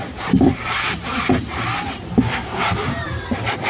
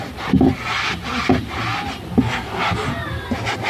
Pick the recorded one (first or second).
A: second